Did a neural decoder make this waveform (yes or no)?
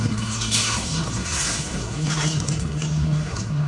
yes